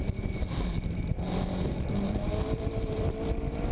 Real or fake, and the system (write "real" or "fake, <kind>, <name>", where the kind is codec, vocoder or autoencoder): fake, vocoder, BigVGAN v2